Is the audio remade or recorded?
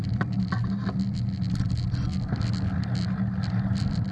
recorded